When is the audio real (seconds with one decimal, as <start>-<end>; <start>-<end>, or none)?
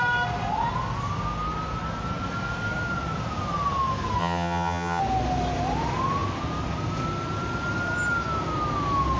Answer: 0.0-4.2; 5.0-9.2